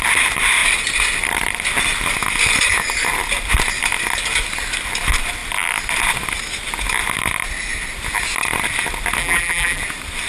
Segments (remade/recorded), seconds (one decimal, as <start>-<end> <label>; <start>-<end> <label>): 0.0-9.2 recorded; 9.2-9.8 remade; 9.8-10.3 recorded